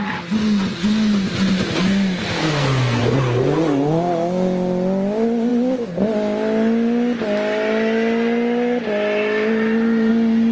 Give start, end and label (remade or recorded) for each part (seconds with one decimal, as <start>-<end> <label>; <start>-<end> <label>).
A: 0.0-2.2 recorded; 2.2-3.0 remade; 3.0-10.5 recorded

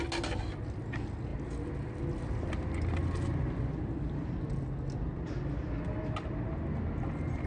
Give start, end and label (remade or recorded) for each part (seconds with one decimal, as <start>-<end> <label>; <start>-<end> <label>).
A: 0.0-7.5 recorded

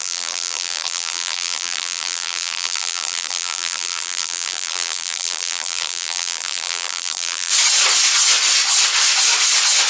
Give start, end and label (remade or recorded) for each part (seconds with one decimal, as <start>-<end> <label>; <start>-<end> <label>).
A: 0.0-7.5 remade; 7.5-9.9 recorded

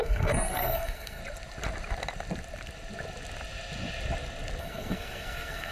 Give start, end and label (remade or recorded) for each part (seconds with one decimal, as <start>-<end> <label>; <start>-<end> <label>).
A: 0.0-1.2 remade; 1.2-4.6 recorded; 4.6-5.7 remade

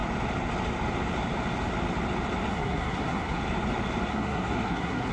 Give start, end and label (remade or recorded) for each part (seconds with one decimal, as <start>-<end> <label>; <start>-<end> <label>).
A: 0.0-2.5 recorded; 2.5-3.4 remade; 3.4-4.1 recorded; 4.1-5.1 remade

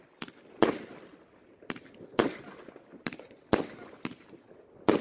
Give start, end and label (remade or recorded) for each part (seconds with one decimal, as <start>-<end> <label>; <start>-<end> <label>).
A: 0.0-5.0 recorded